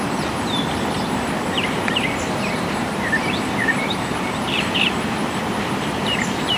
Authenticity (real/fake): fake